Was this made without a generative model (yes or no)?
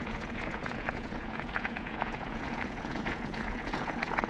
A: no